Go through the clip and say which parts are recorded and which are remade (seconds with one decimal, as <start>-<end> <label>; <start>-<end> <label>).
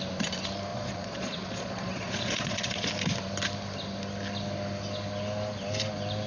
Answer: 0.0-0.7 recorded; 0.7-2.9 remade; 2.9-6.3 recorded